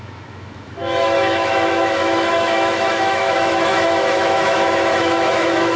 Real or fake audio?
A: fake